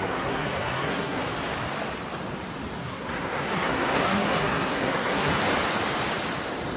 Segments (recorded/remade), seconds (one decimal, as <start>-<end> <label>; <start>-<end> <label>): 0.0-1.2 remade; 1.2-2.8 recorded; 2.8-5.3 remade; 5.3-6.8 recorded